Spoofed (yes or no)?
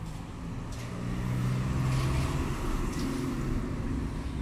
no